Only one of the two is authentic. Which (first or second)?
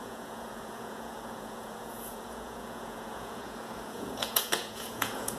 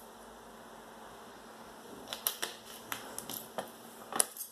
second